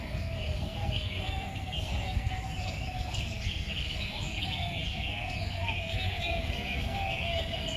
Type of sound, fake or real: fake